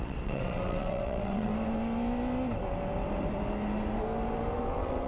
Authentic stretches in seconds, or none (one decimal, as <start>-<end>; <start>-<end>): 1.5-4.6